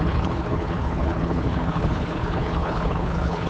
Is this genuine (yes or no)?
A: no